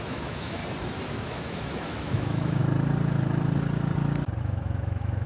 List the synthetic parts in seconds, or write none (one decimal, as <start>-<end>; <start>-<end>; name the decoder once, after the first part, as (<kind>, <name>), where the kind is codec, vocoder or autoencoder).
0.0-0.6 (autoencoder, DAC-VAE); 1.1-2.6; 4.4-5.3